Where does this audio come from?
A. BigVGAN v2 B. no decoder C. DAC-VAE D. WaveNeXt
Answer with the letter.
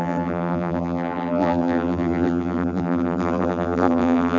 A